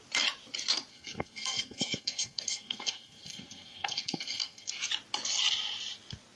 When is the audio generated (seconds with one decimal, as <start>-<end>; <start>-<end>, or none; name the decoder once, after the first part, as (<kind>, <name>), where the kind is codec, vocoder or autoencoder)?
0.9-4.7 (codec, SNAC)